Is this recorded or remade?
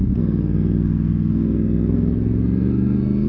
remade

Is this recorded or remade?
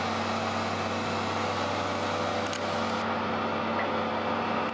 recorded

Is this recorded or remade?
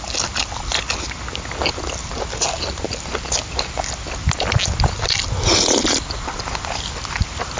recorded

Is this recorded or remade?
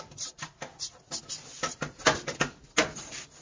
recorded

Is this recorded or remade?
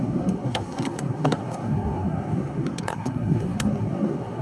remade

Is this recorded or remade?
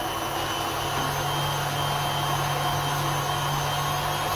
recorded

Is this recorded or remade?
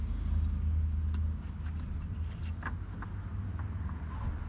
recorded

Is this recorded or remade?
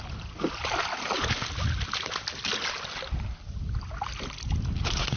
recorded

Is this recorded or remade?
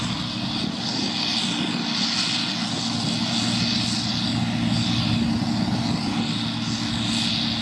recorded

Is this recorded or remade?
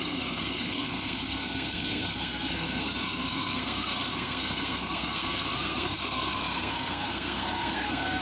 remade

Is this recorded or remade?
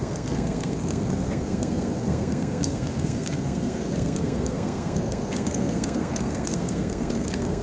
remade